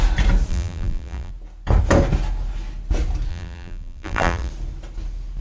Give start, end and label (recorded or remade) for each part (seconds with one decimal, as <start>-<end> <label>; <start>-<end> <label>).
0.0-0.5 recorded; 0.5-1.3 remade; 1.3-3.3 recorded; 3.3-4.5 remade; 4.5-5.4 recorded